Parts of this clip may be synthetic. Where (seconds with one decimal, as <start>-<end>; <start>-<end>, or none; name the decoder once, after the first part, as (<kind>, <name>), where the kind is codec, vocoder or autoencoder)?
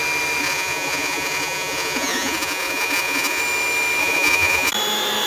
0.4-3.4 (vocoder, Vocos); 4.0-4.7